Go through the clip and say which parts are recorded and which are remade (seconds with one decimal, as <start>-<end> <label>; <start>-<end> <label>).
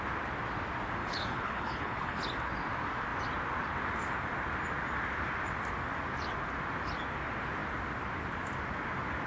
0.0-1.0 recorded; 1.0-2.2 remade; 2.2-9.3 recorded